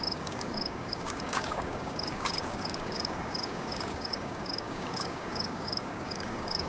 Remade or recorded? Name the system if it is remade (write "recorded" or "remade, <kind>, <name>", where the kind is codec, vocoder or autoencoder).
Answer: remade, codec, DAC